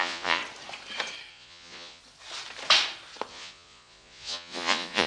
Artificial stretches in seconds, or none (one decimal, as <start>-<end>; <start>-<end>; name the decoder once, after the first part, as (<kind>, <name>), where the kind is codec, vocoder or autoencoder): 0.0-0.4 (vocoder, Vocos); 1.3-2.0; 3.3-5.1